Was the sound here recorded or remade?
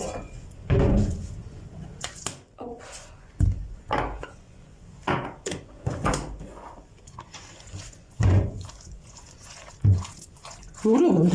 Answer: remade